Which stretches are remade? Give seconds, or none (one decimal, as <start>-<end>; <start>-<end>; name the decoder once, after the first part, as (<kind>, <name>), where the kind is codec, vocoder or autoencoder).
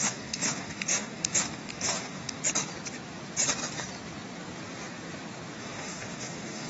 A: 0.0-2.4 (codec, DAC); 5.6-6.7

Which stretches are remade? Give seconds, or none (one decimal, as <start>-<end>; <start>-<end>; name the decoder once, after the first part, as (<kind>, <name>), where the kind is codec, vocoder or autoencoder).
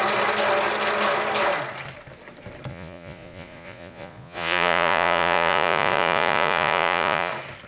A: 2.7-7.3 (vocoder, Vocos)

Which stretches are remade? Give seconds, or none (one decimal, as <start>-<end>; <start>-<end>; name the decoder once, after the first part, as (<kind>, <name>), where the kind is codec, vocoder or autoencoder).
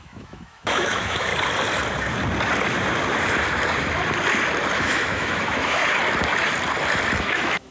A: 0.0-1.3 (autoencoder, DAC-VAE); 4.8-5.8; 7.2-7.7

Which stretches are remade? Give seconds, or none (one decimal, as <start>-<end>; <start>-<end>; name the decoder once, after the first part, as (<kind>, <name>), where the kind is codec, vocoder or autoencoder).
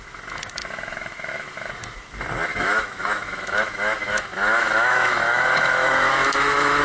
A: 0.6-1.7 (autoencoder, DAC-VAE); 2.5-6.8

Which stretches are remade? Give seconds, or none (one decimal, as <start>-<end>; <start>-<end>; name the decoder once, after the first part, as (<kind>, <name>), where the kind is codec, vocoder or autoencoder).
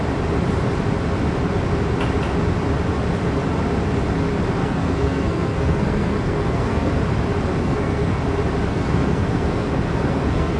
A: 4.6-6.9 (codec, SNAC); 7.6-8.2; 8.7-10.6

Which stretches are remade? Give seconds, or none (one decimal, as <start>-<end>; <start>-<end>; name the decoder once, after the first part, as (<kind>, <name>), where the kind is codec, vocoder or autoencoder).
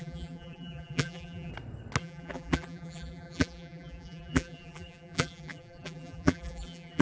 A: 0.0-1.5 (vocoder, BigVGAN v2); 2.0-7.0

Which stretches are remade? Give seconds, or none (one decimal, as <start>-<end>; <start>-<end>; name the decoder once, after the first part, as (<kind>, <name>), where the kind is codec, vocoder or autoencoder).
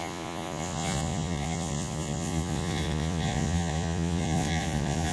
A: 0.0-5.1 (vocoder, Vocos)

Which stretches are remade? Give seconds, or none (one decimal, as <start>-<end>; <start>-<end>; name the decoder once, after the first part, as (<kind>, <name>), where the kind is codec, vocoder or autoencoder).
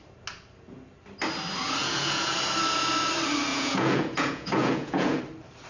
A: 1.8-2.4 (vocoder, Vocos); 3.5-5.2